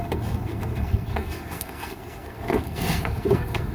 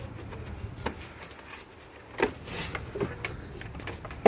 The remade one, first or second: first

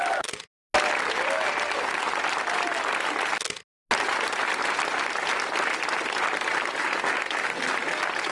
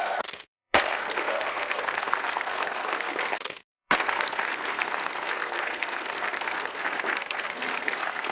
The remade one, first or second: second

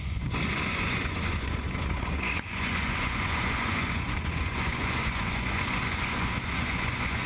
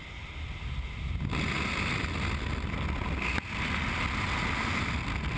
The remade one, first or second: first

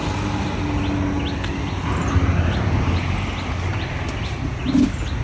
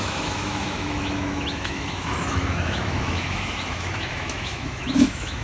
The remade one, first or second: second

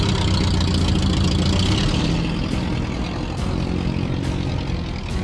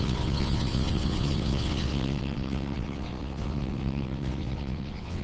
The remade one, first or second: second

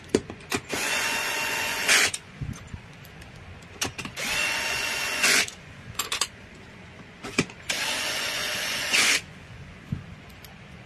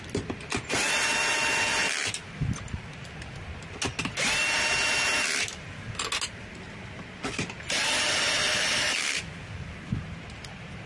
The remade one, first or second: first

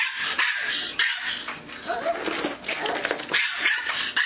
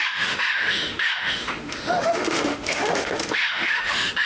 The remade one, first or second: second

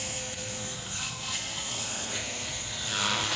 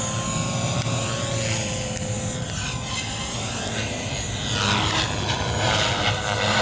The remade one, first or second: first